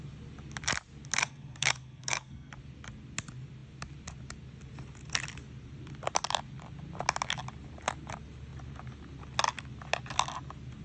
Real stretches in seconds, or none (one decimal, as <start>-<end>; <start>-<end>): 0.0-1.2; 2.5-10.8